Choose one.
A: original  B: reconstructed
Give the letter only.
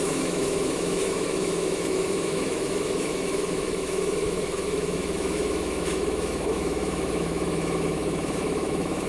B